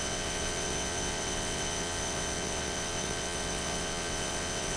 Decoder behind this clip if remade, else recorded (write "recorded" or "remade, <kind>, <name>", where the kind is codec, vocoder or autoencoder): remade, vocoder, WaveNeXt